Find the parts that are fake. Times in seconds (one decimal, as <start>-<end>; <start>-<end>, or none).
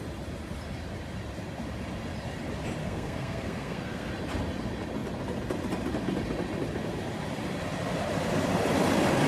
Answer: 2.8-4.1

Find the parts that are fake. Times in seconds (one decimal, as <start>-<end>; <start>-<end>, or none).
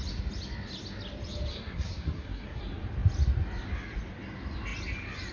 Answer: 1.5-2.6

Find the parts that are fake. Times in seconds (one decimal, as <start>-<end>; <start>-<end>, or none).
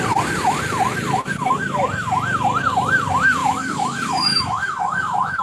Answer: 3.4-5.4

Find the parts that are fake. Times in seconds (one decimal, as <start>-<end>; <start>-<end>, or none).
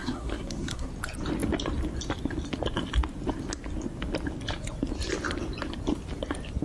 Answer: 0.0-0.9